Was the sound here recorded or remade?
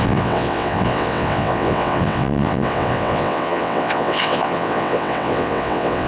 remade